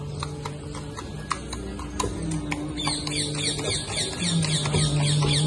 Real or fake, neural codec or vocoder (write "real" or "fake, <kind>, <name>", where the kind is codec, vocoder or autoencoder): real